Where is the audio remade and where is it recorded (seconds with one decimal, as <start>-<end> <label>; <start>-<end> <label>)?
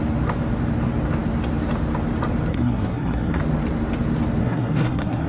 0.0-2.5 recorded; 2.5-3.4 remade; 3.4-4.4 recorded; 4.4-5.3 remade